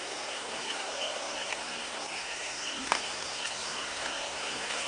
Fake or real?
fake